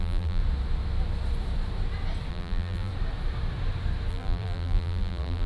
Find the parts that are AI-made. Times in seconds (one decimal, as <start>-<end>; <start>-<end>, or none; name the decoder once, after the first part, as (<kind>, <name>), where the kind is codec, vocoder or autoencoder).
0.0-0.4 (vocoder, BigVGAN v2); 2.3-2.9; 4.1-5.5